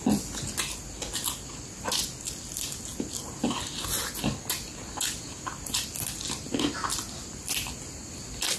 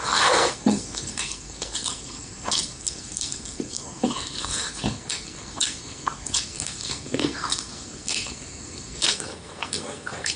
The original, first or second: first